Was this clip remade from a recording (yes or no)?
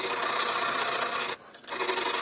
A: no